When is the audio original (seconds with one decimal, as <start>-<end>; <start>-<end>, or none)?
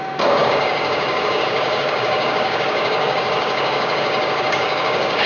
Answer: none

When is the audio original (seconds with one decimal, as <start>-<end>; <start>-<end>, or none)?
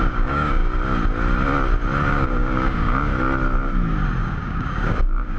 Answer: 0.6-2.1; 3.1-4.2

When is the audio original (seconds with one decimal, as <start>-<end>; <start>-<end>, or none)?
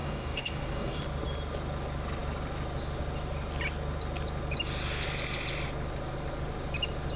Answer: 1.0-7.2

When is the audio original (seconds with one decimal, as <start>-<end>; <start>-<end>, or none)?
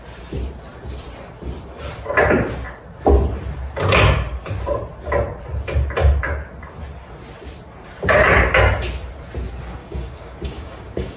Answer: 0.0-9.8